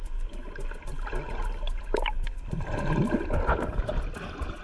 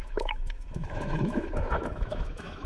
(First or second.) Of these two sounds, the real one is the first